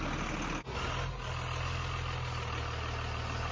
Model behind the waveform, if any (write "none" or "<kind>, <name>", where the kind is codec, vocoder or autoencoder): none